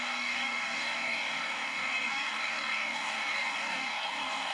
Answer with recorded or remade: remade